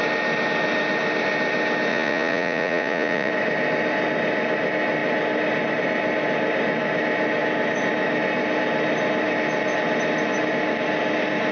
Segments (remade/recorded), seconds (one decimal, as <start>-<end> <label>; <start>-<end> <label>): 0.0-1.9 recorded; 1.9-3.3 remade; 3.3-11.5 recorded